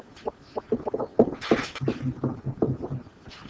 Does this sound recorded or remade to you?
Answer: recorded